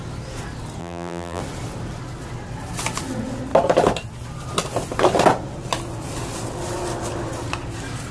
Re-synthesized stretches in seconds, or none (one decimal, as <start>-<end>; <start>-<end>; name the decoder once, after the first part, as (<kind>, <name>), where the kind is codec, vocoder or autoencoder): 0.8-1.4 (vocoder, BigVGAN v2)